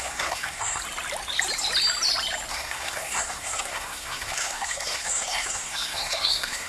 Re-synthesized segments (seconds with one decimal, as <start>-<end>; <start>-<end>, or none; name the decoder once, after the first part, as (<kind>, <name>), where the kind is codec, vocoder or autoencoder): 0.0-0.8 (codec, SNAC); 2.5-6.7